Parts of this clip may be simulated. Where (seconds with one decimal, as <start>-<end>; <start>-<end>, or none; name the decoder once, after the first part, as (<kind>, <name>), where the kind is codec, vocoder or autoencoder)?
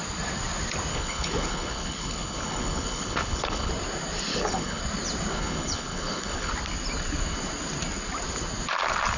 0.9-3.7 (codec, HILCodec); 4.3-4.8; 5.3-6.5